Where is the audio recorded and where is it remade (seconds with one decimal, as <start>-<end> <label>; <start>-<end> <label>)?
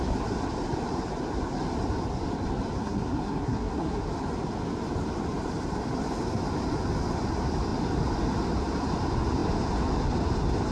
0.0-2.8 recorded; 2.8-4.1 remade; 4.1-10.7 recorded